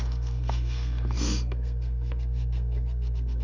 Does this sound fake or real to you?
fake